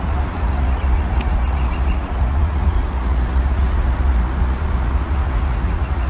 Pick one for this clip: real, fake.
fake